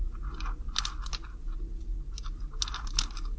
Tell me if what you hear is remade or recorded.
recorded